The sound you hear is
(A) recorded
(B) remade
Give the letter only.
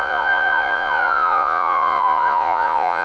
B